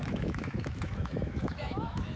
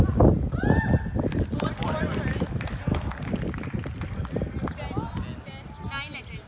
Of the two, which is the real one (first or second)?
second